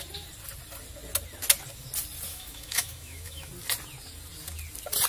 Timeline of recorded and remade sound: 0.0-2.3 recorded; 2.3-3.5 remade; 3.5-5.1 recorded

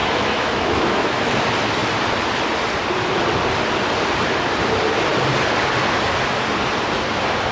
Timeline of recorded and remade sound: 0.0-1.4 remade; 1.4-7.5 recorded

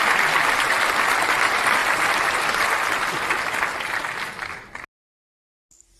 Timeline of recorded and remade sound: 0.0-6.0 recorded

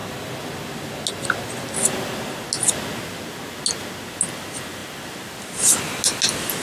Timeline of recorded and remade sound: 0.0-6.6 recorded

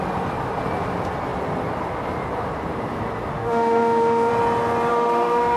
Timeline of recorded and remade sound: 0.0-3.3 recorded; 3.3-4.3 remade; 4.3-4.9 recorded; 4.9-5.6 remade

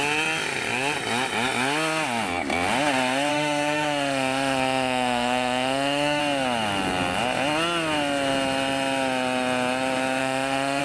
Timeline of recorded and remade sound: 0.0-3.3 recorded; 3.3-6.2 remade; 6.2-10.2 recorded; 10.2-10.8 remade